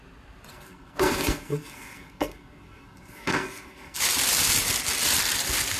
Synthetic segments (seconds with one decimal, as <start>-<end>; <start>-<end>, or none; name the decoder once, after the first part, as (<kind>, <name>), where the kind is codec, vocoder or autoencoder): 0.5-4.0 (codec, SNAC)